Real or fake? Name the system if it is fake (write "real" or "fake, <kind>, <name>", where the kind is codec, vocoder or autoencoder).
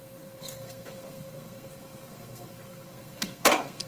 fake, codec, SNAC